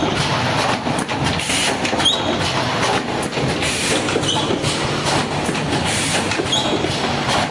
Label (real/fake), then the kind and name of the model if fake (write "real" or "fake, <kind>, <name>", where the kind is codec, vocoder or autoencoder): fake, vocoder, BigVGAN v2